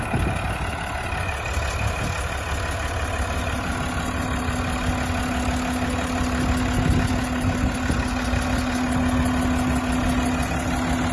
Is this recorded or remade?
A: recorded